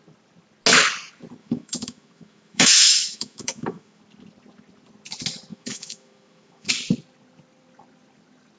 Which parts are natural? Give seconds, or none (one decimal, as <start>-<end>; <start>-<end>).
0.0-1.4; 4.0-5.5; 6.7-8.6